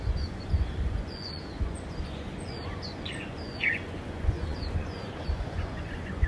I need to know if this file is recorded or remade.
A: remade